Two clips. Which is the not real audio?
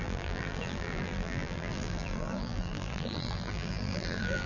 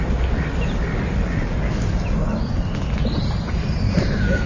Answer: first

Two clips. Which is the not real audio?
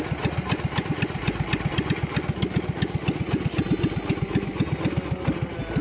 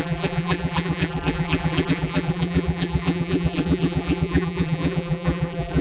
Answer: second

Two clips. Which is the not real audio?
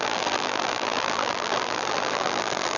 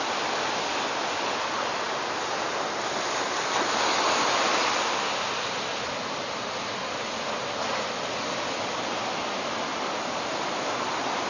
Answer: first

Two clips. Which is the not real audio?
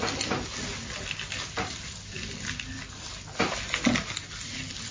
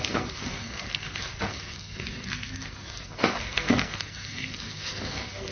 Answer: second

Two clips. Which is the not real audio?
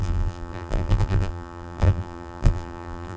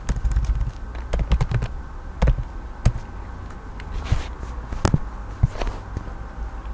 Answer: first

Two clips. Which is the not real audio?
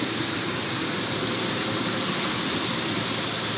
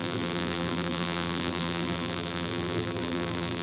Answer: second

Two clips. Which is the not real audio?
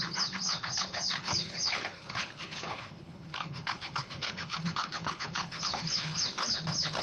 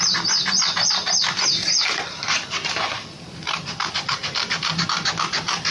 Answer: first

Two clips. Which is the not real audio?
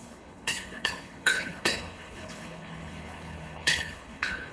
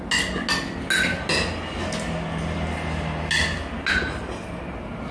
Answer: first